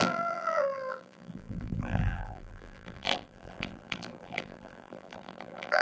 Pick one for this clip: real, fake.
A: fake